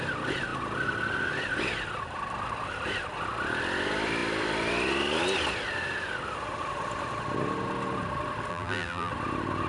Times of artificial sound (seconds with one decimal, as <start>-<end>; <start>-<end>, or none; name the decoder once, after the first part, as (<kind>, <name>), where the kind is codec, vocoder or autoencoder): 8.5-9.1 (vocoder, BigVGAN v2)